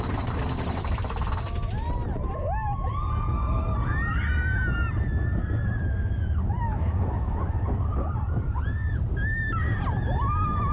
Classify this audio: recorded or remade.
recorded